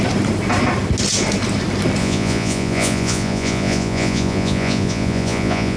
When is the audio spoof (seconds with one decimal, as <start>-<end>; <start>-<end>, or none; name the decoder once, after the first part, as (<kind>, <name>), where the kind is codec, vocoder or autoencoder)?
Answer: 2.0-5.8 (vocoder, Vocos)